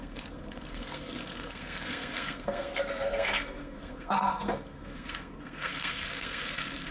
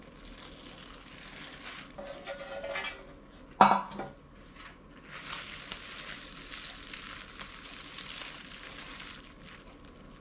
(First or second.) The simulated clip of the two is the first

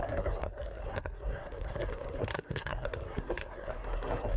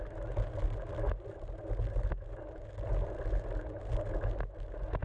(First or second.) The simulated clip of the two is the first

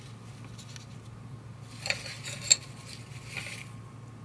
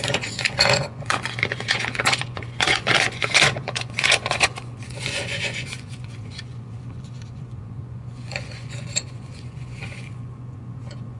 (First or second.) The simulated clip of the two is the second